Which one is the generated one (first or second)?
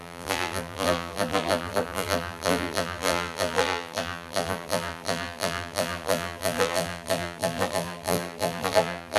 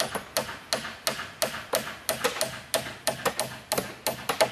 first